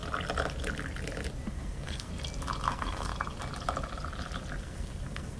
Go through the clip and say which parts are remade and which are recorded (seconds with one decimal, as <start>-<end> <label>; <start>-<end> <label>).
0.0-1.5 recorded; 1.5-2.1 remade; 2.1-2.7 recorded; 2.7-3.1 remade; 3.1-4.6 recorded; 4.6-5.4 remade